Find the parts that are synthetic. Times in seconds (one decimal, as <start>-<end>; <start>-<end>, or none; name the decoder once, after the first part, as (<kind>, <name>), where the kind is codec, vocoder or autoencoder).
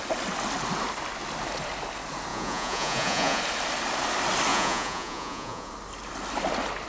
2.3-3.4 (vocoder, Vocos); 4.5-5.7